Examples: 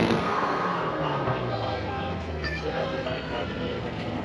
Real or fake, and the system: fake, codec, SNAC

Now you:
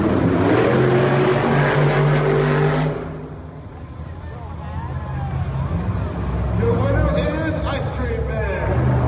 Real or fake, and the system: real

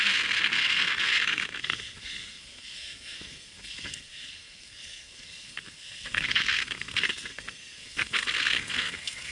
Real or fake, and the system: fake, codec, SNAC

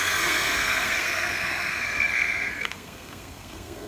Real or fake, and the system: fake, codec, SNAC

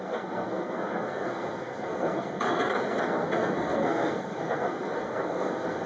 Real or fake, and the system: fake, codec, SNAC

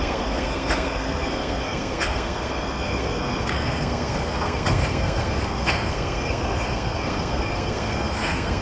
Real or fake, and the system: fake, codec, SNAC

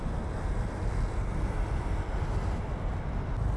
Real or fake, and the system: real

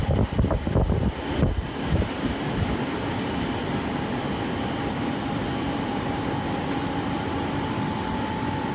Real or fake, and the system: real